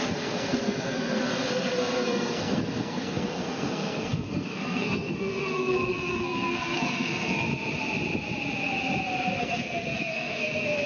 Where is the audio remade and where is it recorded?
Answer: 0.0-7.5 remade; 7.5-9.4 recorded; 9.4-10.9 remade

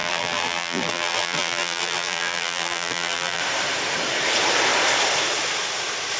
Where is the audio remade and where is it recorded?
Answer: 0.0-3.4 remade; 3.4-6.2 recorded

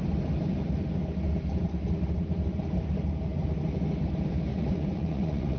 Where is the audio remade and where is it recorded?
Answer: 0.0-4.5 recorded; 4.5-5.6 remade

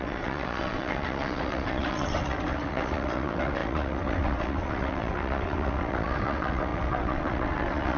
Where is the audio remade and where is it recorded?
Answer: 0.0-8.0 remade

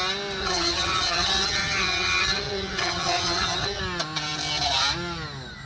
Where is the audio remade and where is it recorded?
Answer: 0.0-0.4 recorded; 0.4-3.8 remade; 3.8-5.7 recorded